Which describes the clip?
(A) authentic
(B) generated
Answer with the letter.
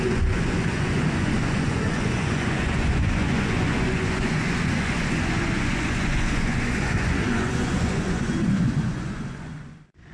B